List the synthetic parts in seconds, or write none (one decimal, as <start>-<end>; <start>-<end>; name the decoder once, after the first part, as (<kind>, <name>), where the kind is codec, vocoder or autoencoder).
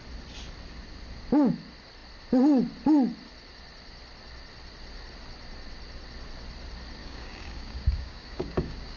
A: 7.0-9.0 (codec, DAC)